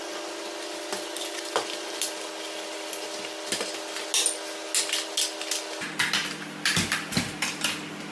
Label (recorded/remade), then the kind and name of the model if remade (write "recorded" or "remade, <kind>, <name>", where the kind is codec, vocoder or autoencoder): recorded